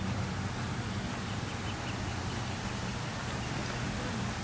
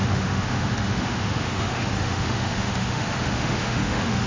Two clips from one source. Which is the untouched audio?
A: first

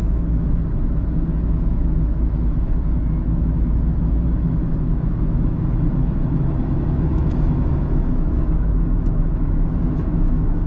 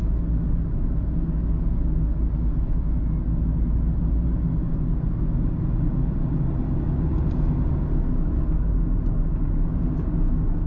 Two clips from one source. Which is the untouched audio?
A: second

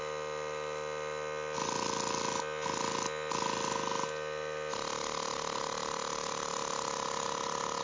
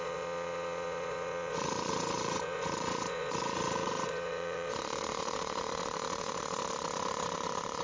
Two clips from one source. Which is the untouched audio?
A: first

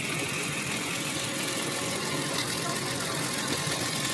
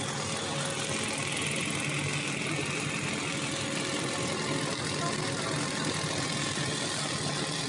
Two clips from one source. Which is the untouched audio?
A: second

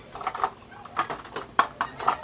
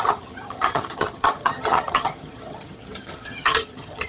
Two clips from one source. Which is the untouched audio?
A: first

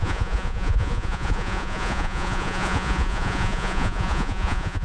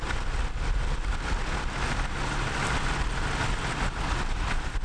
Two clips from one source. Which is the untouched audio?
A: second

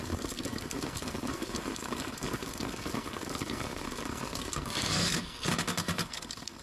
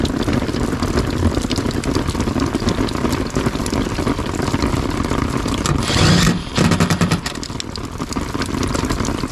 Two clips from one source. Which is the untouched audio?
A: second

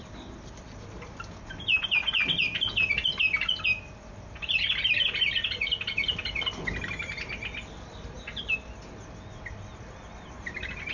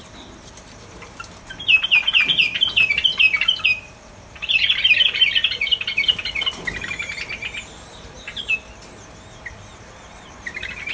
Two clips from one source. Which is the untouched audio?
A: first